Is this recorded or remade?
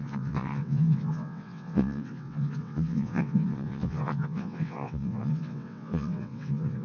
remade